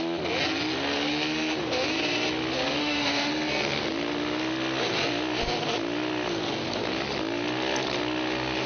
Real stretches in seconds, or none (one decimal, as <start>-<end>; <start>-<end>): 0.0-2.8; 3.3-8.7